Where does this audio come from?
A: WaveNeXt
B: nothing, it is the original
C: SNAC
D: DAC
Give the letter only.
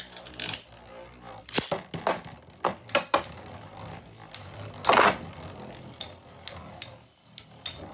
B